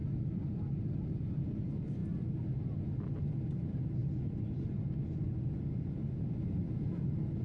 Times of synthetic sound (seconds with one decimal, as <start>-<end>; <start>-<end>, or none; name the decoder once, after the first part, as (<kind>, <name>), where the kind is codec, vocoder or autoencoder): 0.0-0.8 (vocoder, BigVGAN v2); 4.0-5.6